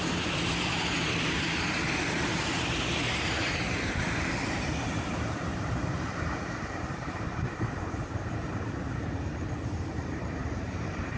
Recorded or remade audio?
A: remade